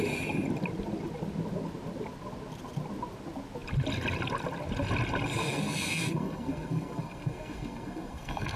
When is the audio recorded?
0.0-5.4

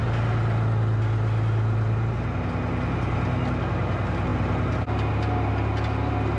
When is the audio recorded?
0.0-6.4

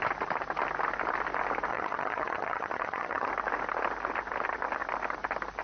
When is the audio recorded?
0.0-1.7; 3.3-5.6

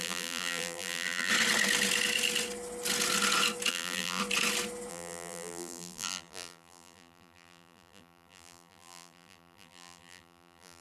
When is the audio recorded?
1.3-3.7; 4.2-4.9